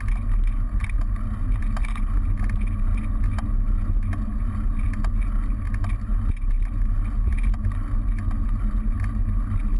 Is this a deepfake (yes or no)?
no